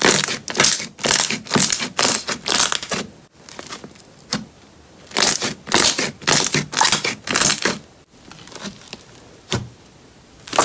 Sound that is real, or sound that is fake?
real